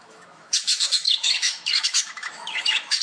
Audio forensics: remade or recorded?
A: remade